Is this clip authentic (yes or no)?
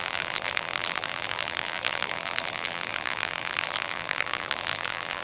no